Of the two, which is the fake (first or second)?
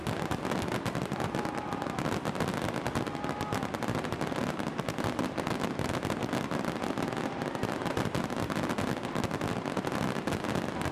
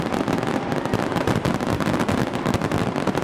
second